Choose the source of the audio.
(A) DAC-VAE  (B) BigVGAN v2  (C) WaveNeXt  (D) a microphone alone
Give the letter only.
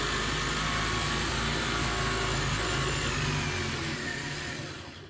D